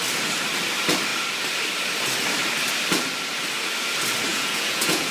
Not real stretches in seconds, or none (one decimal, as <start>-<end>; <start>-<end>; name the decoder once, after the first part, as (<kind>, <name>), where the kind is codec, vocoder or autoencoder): 4.3-5.1 (vocoder, Vocos)